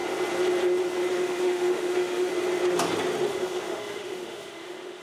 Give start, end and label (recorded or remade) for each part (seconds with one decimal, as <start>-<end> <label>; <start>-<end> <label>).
0.0-1.1 recorded; 1.1-2.3 remade; 2.3-3.3 recorded; 3.3-5.0 remade